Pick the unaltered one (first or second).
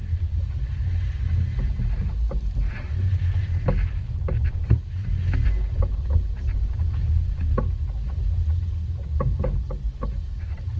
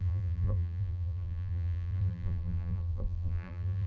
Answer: first